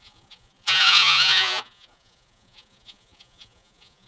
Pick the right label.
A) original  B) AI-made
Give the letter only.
B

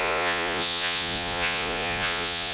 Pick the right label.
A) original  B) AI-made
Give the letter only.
B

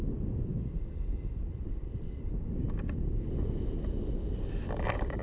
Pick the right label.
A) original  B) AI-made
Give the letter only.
A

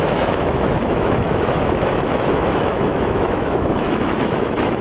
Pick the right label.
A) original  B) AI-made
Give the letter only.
B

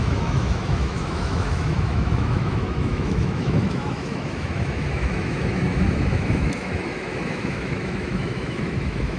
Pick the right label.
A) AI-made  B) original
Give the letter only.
A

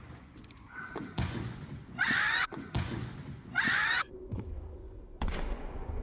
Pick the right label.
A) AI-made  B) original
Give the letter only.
A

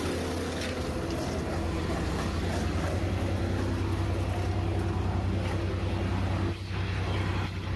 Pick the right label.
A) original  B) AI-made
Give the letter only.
A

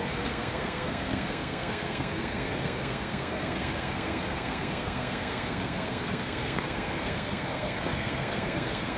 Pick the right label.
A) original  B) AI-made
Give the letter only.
B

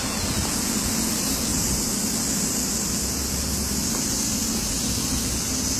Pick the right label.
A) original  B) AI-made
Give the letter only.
A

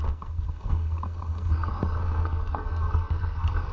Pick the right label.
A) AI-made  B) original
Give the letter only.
A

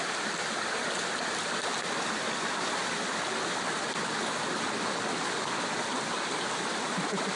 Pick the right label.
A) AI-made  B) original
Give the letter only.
B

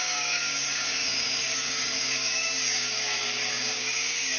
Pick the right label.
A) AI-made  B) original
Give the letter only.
A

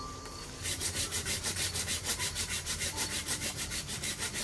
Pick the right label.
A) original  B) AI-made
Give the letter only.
B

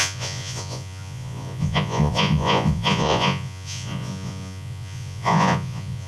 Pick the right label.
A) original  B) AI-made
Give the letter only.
B